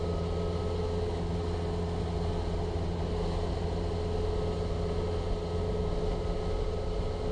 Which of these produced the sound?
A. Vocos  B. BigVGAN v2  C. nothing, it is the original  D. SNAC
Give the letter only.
C